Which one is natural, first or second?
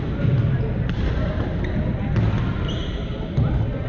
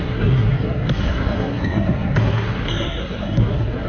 first